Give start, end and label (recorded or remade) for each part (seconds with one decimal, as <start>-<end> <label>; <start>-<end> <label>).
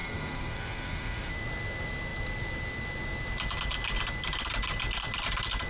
0.0-1.3 remade; 1.3-5.7 recorded